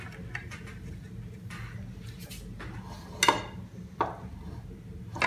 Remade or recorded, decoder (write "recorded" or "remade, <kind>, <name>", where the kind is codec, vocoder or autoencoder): recorded